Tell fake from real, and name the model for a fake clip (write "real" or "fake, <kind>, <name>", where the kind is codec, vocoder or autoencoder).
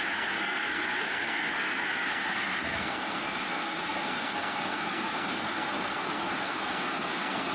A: fake, codec, SNAC